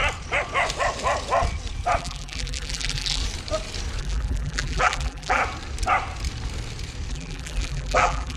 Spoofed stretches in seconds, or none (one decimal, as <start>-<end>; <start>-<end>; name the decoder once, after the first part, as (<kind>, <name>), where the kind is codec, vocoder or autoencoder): 2.0-3.2 (vocoder, BigVGAN v2); 4.0-5.4; 7.1-8.4